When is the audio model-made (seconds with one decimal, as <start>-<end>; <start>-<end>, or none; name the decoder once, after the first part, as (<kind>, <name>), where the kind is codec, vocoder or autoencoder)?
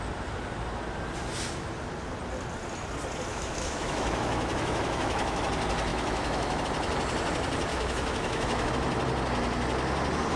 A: 3.3-5.4 (autoencoder, DAC-VAE); 5.9-6.6; 7.7-8.7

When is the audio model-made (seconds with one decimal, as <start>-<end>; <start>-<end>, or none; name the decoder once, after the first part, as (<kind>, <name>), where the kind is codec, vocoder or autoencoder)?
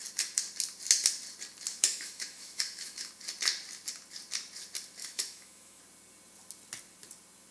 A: 1.7-3.1 (autoencoder, DAC-VAE); 5.0-5.8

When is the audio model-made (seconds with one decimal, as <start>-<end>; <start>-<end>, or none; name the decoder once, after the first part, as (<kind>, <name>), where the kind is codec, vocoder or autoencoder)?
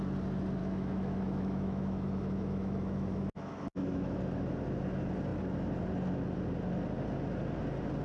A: 0.6-4.2 (autoencoder, DAC-VAE)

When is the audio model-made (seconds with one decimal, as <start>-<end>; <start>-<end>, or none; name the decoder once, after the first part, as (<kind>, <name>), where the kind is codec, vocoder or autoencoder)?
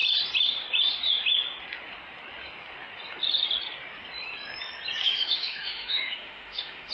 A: 5.0-6.9 (autoencoder, DAC-VAE)